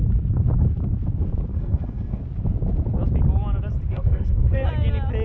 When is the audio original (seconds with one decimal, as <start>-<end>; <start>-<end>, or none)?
0.0-1.5; 2.2-3.9; 4.7-5.2

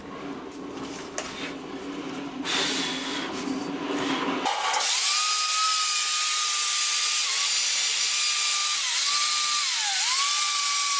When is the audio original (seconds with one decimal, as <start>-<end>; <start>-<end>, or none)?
0.0-11.0

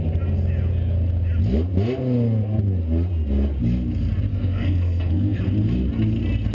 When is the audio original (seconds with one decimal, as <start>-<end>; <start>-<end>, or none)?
0.0-4.3; 5.4-6.5

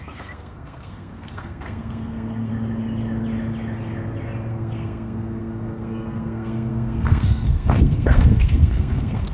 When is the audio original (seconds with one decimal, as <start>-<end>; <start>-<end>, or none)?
2.5-4.5

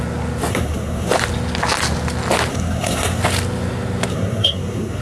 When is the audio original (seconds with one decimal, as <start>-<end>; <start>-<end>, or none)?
0.0-0.5; 1.1-2.5; 3.2-4.1

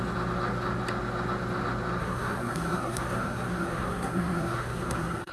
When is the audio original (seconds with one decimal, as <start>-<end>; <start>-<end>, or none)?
0.0-2.0

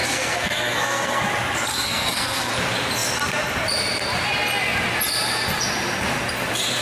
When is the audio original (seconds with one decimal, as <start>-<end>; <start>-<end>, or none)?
1.2-1.7; 2.5-6.8

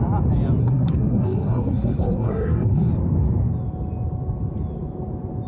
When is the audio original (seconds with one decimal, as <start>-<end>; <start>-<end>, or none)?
0.0-0.6; 2.9-5.5